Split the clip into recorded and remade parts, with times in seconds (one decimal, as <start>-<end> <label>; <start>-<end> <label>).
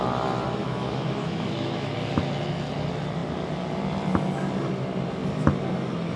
0.0-0.6 recorded; 0.6-1.9 remade; 1.9-6.2 recorded